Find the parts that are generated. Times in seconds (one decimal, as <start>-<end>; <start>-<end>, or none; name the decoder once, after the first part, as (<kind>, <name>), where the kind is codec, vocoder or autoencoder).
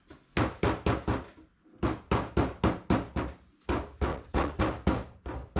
4.1-4.6 (vocoder, WaveNeXt)